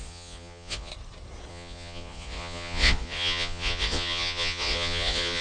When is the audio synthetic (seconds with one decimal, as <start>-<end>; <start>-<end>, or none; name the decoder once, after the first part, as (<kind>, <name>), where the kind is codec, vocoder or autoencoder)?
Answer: 0.0-0.9 (vocoder, Vocos); 1.5-5.4

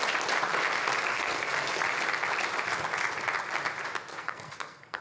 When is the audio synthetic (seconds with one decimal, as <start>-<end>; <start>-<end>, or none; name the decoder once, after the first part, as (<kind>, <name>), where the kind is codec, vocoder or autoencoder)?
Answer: 1.1-1.8 (codec, SNAC); 4.1-5.0

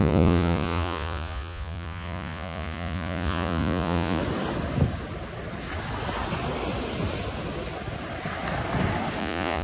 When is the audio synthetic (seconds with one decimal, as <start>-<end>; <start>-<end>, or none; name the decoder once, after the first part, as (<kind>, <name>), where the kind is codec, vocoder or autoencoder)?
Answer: 0.0-4.2 (vocoder, Vocos); 9.2-9.6

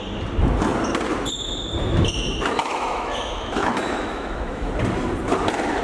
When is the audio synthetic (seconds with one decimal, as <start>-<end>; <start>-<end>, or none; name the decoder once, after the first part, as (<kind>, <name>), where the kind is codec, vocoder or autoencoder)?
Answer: 2.6-4.7 (autoencoder, DAC-VAE)